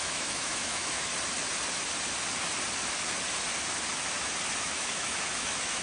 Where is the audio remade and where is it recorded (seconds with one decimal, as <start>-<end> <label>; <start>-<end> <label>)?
0.0-1.1 remade; 1.1-4.6 recorded; 4.6-5.8 remade